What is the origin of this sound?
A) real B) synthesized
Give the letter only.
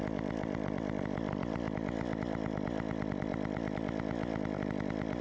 A